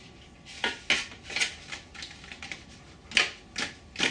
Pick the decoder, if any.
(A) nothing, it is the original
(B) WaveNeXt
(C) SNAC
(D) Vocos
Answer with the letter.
A